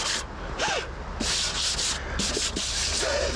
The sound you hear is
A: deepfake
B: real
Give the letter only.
B